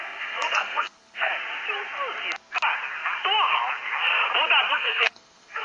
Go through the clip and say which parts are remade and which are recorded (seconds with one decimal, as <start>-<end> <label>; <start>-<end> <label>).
0.0-1.3 remade; 1.3-4.7 recorded; 4.7-5.6 remade